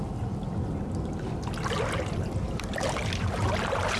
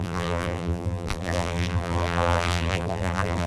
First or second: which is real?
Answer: first